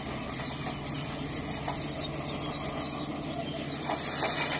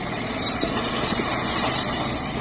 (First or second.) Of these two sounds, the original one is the first